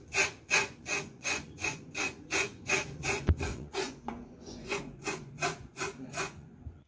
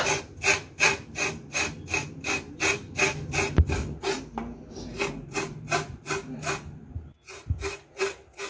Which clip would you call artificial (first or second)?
first